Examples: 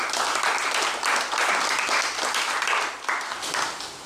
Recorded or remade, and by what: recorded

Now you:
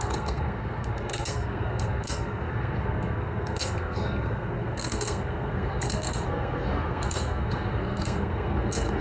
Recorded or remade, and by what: remade, codec, SNAC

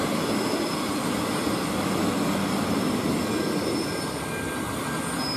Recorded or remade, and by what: recorded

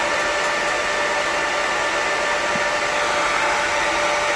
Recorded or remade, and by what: recorded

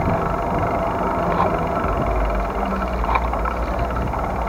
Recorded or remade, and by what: recorded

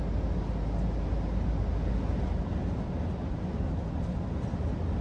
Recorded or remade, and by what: recorded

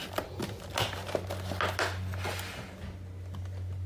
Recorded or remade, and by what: recorded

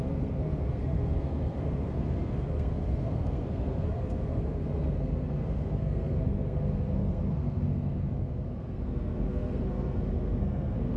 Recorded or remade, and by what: remade, codec, SNAC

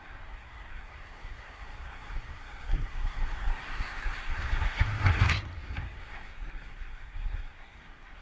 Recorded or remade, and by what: remade, codec, SNAC